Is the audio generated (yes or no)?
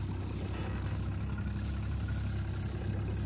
no